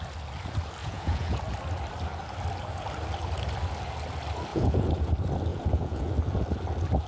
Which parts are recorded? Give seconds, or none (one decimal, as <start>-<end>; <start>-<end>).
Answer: 0.0-0.8; 1.4-4.5; 5.1-5.5; 6.1-7.1